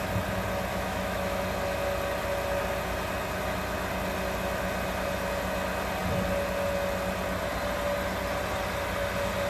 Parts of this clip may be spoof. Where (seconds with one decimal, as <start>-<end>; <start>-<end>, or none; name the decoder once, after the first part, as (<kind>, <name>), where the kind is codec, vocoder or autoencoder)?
0.7-1.4 (autoencoder, DAC-VAE)